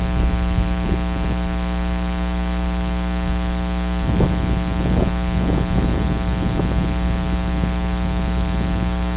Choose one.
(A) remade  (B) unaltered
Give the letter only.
B